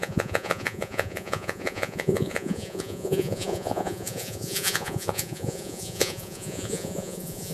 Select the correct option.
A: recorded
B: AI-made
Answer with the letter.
B